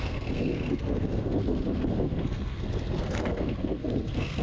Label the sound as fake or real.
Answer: fake